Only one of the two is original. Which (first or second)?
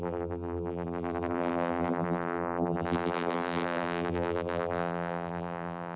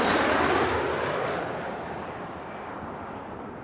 second